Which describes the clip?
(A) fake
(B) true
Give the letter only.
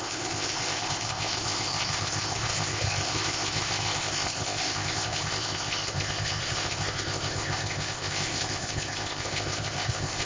A